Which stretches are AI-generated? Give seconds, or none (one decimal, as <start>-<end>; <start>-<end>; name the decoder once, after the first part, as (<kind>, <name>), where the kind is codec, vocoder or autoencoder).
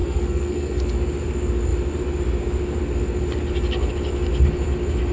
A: 0.0-0.8 (codec, SNAC)